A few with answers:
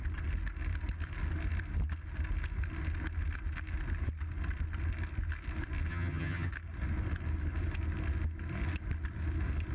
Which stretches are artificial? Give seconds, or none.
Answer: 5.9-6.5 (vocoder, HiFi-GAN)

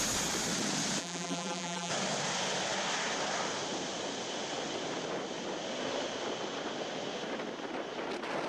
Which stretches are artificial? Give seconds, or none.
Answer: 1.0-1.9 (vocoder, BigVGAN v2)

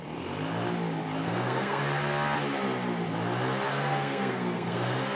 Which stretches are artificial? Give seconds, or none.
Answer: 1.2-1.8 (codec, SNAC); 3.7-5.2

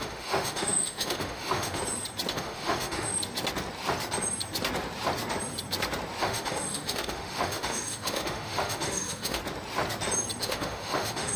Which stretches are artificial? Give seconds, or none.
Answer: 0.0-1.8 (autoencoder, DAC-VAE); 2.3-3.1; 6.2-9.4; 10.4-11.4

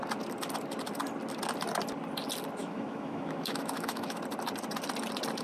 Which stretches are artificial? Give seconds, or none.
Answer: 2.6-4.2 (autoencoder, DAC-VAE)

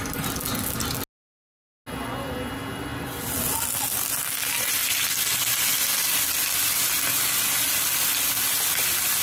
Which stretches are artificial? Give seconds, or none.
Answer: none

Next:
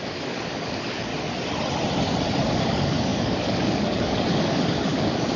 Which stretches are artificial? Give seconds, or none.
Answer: 0.0-1.1 (codec, DAC); 2.6-5.4

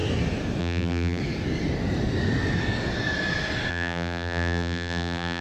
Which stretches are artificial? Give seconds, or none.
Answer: 0.6-1.2 (vocoder, BigVGAN v2); 3.7-5.4